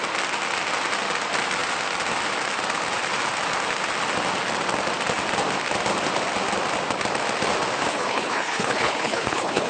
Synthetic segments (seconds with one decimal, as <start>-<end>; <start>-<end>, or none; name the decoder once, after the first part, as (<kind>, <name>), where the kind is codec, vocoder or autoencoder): 7.9-9.7 (codec, HILCodec)